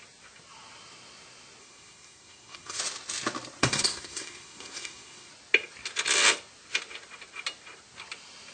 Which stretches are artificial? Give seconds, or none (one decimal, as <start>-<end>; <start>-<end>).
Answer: 1.6-2.8; 3.6-5.3